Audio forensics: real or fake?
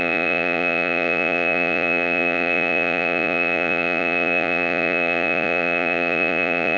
fake